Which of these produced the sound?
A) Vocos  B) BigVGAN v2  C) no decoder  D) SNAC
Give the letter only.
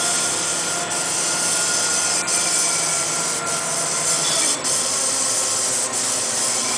C